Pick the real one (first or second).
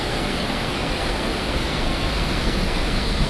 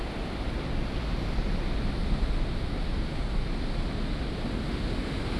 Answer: second